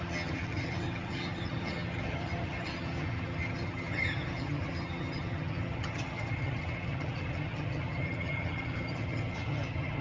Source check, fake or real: fake